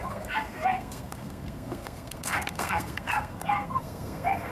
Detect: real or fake fake